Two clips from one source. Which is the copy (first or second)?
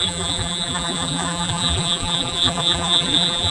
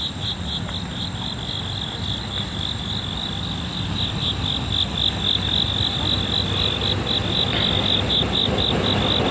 first